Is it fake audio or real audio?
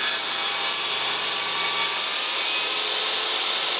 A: real